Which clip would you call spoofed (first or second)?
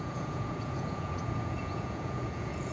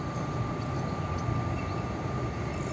first